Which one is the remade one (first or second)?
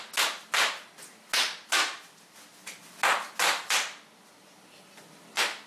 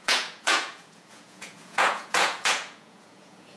second